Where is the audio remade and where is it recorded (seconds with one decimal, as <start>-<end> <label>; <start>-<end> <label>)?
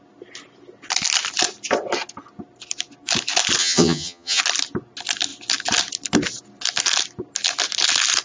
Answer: 0.0-3.6 recorded; 3.6-4.4 remade; 4.4-8.2 recorded